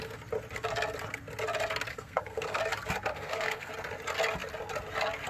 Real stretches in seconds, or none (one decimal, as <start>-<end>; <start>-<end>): 0.0-1.9; 2.6-3.1; 3.7-5.3